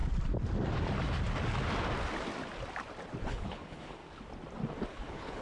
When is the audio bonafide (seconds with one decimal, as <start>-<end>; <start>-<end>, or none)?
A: 0.0-3.2; 4.0-4.9